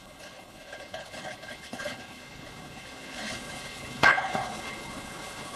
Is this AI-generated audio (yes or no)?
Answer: yes